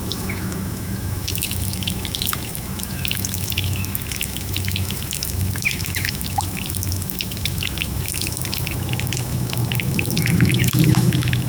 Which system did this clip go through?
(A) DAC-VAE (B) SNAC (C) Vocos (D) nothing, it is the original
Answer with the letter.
A